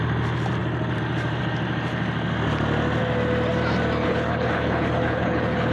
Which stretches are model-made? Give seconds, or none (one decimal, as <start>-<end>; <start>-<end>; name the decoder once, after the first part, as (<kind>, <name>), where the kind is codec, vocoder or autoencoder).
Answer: 4.0-5.7 (codec, HILCodec)